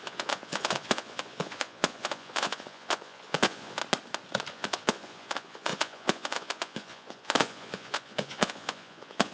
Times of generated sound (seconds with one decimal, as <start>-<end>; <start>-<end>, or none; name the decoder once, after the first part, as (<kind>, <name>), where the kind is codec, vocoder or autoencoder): 0.0-3.8 (vocoder, Vocos); 4.5-9.3